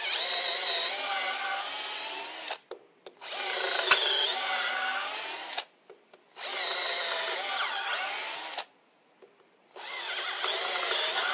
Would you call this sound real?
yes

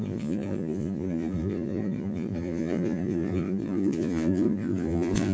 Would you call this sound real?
no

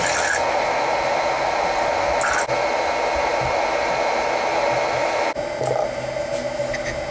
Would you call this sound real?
yes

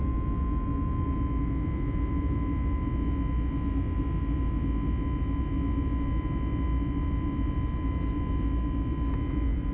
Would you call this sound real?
yes